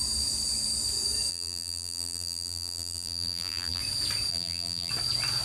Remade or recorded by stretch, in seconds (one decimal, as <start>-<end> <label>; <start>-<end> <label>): 0.0-1.3 recorded; 1.3-3.8 remade; 3.8-4.3 recorded; 4.3-4.9 remade; 4.9-5.4 recorded